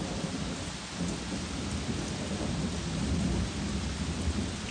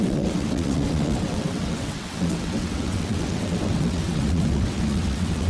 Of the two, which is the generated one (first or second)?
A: second